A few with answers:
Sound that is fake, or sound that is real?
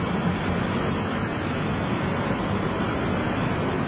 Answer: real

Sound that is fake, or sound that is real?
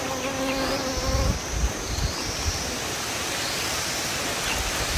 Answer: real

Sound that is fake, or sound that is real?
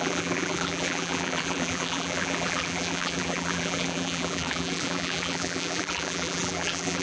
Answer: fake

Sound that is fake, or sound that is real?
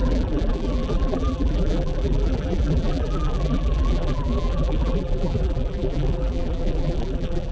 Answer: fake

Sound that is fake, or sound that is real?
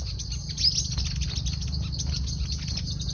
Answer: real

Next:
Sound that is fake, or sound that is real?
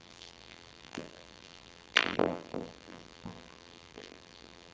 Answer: fake